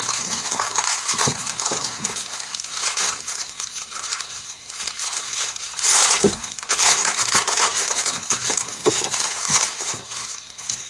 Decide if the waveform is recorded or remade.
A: remade